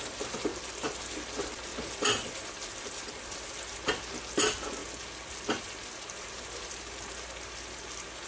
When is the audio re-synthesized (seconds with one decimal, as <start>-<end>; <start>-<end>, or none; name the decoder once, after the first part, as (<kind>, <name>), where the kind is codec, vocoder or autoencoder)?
1.7-3.5 (vocoder, BigVGAN v2)